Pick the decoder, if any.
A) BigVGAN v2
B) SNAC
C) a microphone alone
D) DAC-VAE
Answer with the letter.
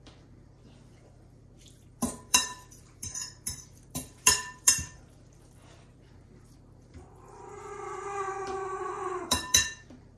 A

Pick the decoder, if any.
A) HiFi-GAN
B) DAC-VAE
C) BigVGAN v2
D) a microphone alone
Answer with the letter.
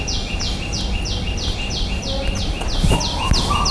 D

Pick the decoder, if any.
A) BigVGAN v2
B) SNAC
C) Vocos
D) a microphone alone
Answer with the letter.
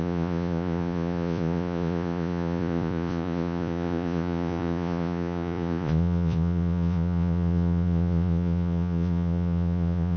C